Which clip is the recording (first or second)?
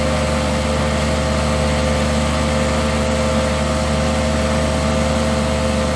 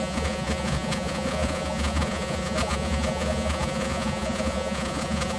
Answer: first